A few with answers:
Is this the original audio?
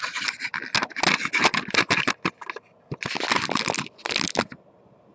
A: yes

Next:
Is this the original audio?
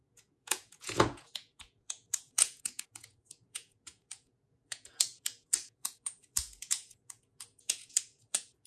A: no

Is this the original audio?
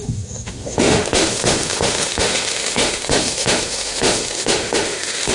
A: no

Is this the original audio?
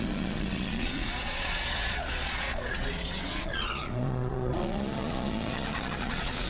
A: no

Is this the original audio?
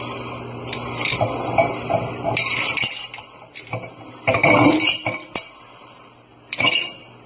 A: no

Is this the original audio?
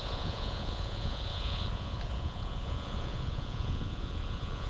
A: no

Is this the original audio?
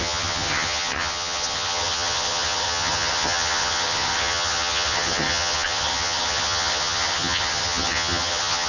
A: no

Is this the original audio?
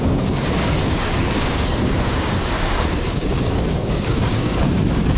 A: no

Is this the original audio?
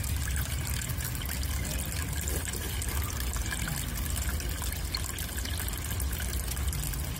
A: yes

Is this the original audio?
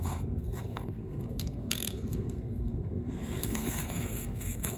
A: no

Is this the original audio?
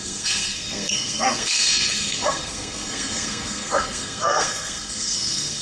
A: no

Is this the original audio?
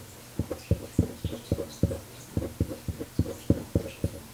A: yes